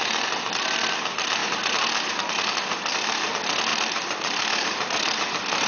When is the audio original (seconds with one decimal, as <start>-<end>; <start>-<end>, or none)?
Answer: 0.0-1.4; 3.3-3.7